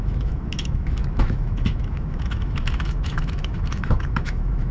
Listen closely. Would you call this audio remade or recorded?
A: remade